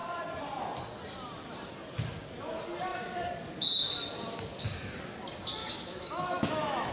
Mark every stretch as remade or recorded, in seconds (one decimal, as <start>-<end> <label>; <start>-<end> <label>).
0.0-5.6 recorded; 5.6-6.9 remade